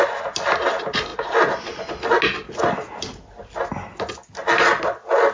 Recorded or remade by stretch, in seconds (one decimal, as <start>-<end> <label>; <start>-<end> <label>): 0.0-5.3 recorded

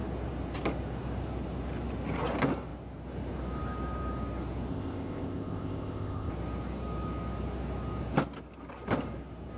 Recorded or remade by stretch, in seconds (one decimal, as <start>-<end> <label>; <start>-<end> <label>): 0.0-4.7 recorded; 4.7-6.3 remade; 6.3-9.6 recorded

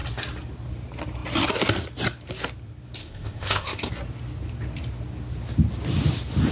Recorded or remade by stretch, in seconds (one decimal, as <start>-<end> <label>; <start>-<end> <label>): 0.0-3.0 recorded; 3.0-3.9 remade; 3.9-6.5 recorded

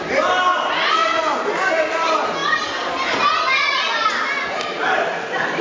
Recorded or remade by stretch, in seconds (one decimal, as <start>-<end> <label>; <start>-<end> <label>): 0.0-5.6 recorded

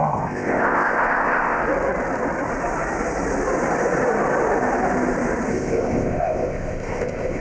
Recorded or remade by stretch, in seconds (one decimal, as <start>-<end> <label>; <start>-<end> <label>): 0.0-1.6 remade; 1.6-5.5 recorded; 5.5-7.4 remade